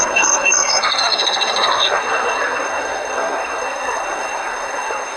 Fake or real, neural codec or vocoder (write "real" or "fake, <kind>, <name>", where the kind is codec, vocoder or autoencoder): fake, codec, SNAC